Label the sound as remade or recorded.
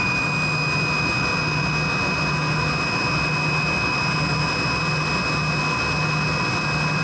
recorded